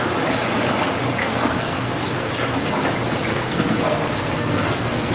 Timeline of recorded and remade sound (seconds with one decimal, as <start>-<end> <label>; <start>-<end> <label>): 0.0-1.2 recorded; 1.2-2.3 remade; 2.3-3.3 recorded; 3.3-5.1 remade